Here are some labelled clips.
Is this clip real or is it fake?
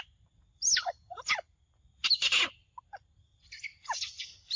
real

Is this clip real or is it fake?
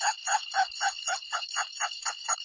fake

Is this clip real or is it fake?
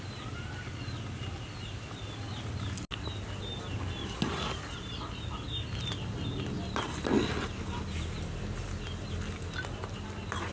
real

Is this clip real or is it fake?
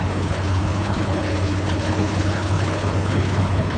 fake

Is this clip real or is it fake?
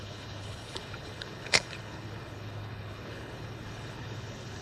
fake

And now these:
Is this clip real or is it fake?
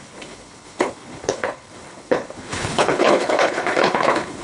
fake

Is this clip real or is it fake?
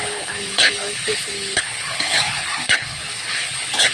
fake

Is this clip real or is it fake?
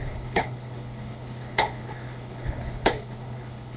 fake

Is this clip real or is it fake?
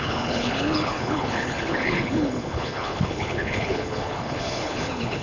fake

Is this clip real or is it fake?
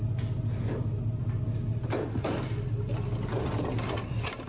real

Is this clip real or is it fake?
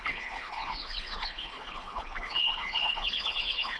fake